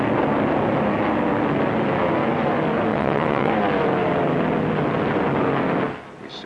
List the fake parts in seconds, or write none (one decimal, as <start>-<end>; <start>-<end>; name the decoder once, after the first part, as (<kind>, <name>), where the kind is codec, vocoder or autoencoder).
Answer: 2.9-3.5 (vocoder, WaveNeXt)